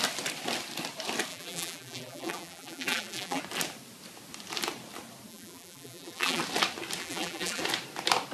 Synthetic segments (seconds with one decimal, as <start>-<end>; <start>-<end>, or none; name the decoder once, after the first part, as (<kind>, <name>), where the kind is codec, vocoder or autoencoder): 1.3-3.4 (vocoder, BigVGAN v2); 5.3-6.4; 7.0-7.6